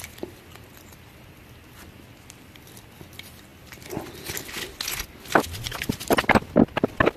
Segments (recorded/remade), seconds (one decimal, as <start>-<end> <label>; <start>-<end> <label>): 0.0-7.2 recorded